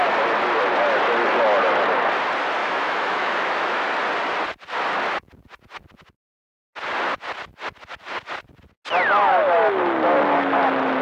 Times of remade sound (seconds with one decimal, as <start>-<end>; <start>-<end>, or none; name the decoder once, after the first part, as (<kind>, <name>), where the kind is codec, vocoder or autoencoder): 2.6-3.9 (autoencoder, DAC-VAE)